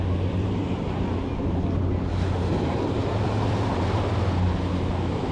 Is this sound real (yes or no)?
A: yes